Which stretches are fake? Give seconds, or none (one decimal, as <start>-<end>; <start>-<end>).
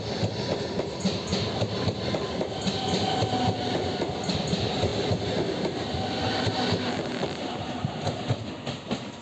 none